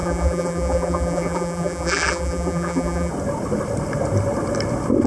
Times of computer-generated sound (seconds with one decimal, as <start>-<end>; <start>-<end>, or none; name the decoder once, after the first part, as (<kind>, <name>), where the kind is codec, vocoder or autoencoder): 0.0-3.1 (vocoder, BigVGAN v2)